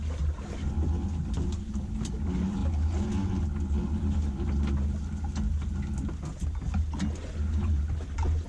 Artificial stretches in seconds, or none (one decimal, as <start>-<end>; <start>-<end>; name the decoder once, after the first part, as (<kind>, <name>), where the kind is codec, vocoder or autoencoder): none